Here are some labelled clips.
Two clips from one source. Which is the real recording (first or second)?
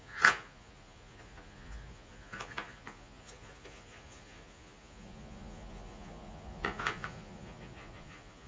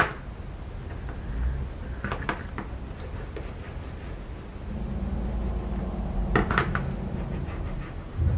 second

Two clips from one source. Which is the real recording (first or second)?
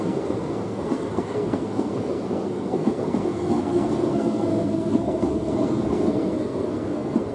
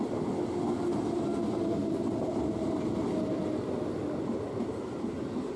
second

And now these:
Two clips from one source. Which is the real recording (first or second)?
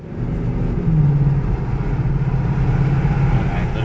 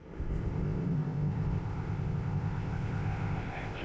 first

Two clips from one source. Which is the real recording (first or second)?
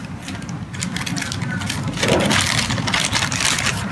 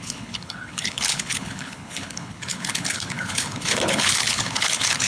first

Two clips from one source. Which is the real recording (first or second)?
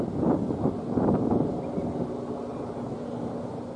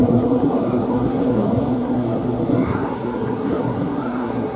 first